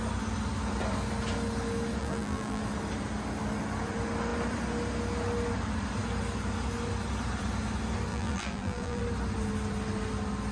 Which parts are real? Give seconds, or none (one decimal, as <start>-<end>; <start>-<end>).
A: 0.0-2.0; 2.6-8.1; 9.0-10.5